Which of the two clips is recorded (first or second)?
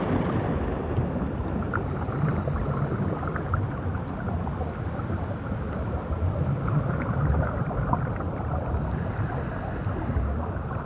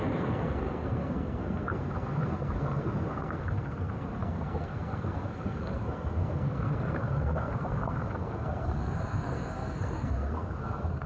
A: first